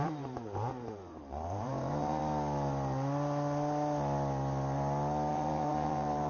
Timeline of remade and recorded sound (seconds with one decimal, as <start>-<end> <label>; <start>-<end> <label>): 0.0-2.2 remade; 2.2-5.3 recorded; 5.3-6.3 remade